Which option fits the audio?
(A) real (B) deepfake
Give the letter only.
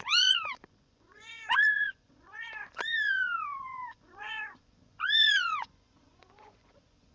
B